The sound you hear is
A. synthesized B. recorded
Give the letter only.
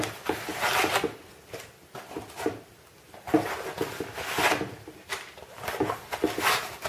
B